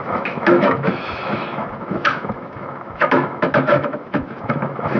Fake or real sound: fake